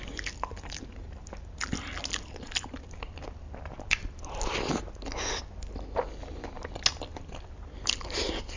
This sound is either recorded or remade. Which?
recorded